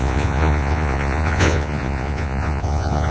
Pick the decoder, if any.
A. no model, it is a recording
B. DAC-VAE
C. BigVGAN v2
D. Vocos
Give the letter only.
D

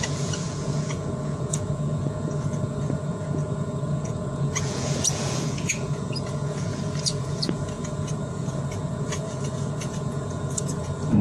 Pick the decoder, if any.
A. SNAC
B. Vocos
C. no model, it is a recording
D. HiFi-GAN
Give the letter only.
B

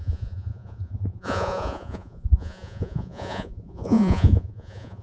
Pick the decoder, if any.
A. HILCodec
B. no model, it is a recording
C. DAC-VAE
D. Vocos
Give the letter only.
D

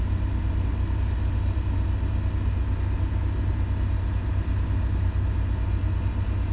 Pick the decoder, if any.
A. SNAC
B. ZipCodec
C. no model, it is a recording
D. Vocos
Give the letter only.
C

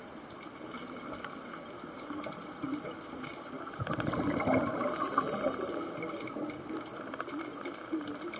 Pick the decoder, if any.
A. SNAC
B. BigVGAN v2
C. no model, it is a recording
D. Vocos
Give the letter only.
C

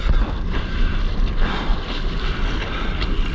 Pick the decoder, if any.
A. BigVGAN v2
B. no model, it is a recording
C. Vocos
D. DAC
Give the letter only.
B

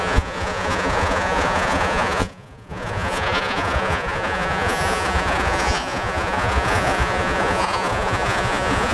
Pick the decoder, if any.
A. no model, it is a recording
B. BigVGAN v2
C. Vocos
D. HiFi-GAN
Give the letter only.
C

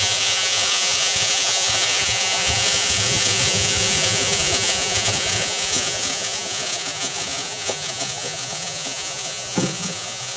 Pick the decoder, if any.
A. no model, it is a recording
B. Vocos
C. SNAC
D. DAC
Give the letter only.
B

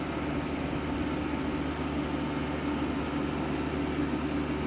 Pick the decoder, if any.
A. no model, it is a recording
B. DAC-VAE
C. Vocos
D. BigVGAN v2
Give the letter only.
A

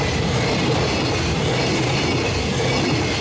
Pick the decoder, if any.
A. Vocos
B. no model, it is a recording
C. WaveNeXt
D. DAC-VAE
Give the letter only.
B